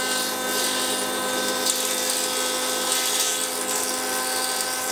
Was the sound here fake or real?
real